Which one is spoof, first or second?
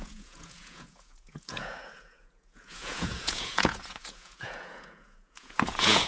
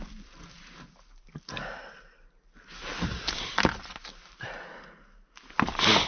first